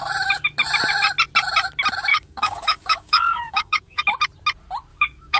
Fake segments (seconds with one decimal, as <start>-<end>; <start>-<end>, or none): 2.1-4.0; 4.9-5.4